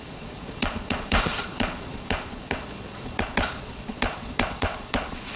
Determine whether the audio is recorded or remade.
remade